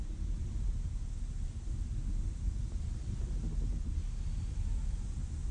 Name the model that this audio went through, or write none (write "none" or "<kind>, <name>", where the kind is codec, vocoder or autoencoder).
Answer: none